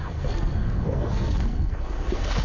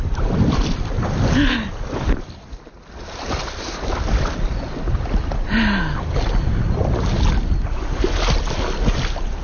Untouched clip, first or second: second